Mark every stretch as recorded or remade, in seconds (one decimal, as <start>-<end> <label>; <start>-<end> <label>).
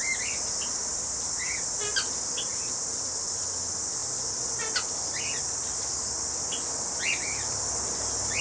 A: 0.0-8.4 recorded